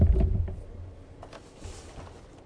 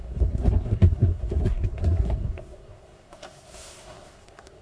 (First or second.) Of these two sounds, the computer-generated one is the second